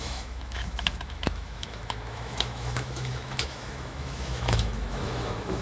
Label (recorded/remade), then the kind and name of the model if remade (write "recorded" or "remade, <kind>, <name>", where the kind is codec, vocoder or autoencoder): remade, autoencoder, DAC-VAE